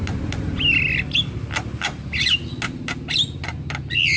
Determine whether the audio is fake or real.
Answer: real